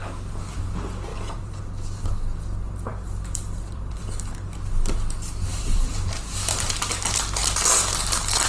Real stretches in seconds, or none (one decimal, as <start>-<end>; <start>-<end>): 0.0-1.1; 1.6-2.9; 4.0-5.5; 6.1-8.5